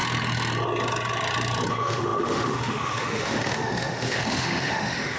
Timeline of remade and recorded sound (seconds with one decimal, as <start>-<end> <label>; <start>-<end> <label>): 0.0-1.7 recorded; 1.7-5.2 remade